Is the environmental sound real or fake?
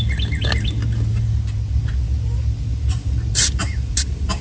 real